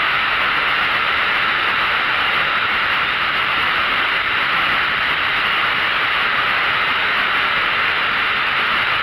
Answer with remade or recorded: remade